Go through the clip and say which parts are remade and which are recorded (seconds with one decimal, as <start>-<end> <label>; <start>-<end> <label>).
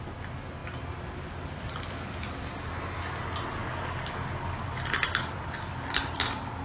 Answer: 0.0-3.6 recorded; 3.6-5.3 remade; 5.3-6.6 recorded